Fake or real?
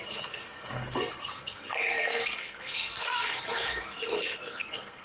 fake